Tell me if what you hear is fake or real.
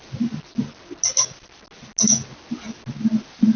real